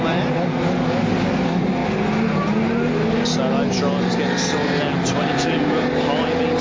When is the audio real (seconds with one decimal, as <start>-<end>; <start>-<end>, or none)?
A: 0.0-6.6